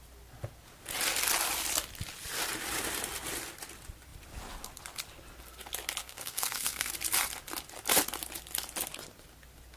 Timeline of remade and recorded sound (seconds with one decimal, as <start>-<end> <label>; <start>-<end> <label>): 0.0-6.0 recorded; 6.0-6.9 remade; 6.9-9.8 recorded